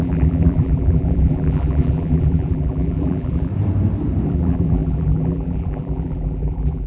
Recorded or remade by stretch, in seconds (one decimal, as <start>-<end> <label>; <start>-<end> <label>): 0.0-3.5 remade; 3.5-4.3 recorded; 4.3-6.9 remade